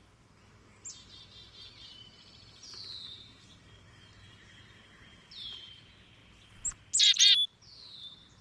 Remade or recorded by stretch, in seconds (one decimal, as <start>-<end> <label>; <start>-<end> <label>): 0.0-1.8 recorded; 1.8-4.6 remade; 4.6-5.1 recorded; 5.1-5.8 remade; 5.8-8.4 recorded